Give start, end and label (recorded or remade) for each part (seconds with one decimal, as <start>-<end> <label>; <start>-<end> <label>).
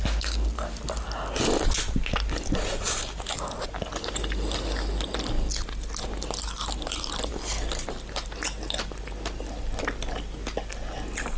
0.0-11.4 recorded